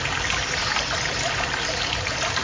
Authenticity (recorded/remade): recorded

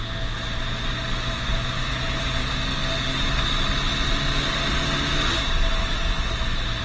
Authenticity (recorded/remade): recorded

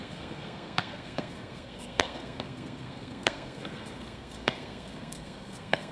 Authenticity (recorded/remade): remade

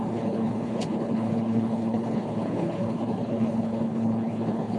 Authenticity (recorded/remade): remade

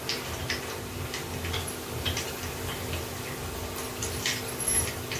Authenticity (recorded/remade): recorded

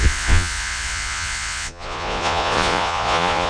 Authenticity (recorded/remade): remade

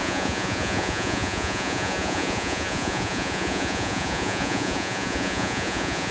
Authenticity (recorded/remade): remade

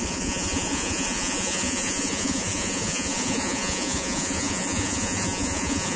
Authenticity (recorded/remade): remade